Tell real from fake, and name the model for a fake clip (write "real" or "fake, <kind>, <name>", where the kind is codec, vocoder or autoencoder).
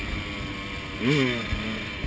real